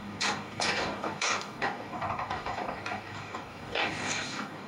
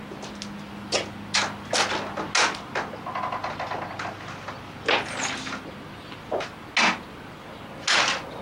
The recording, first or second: second